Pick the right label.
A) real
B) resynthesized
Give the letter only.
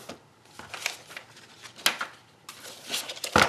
A